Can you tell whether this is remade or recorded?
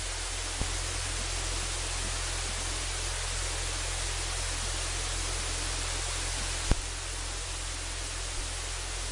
recorded